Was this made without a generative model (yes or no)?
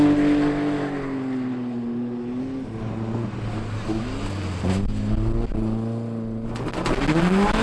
yes